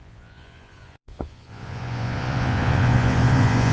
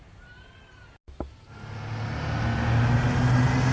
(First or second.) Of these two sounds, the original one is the second